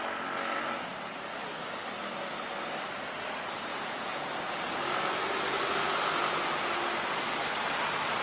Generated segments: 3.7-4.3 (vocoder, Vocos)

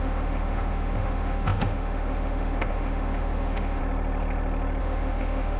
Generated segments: 0.0-3.8 (autoencoder, DAC-VAE); 4.8-5.6

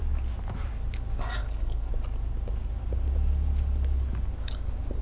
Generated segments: 1.4-1.9 (codec, HILCodec)

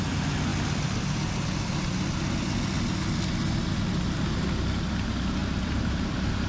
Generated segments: 5.4-6.5 (vocoder, BigVGAN v2)

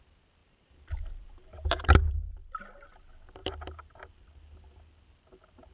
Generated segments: 0.4-2.2 (vocoder, BigVGAN v2); 3.4-4.1

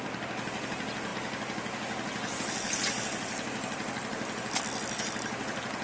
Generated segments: none

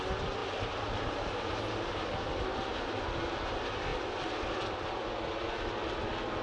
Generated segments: 0.4-3.2 (vocoder, BigVGAN v2)

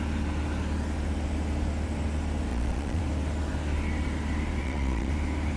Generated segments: 2.5-3.0 (vocoder, Vocos); 4.6-5.1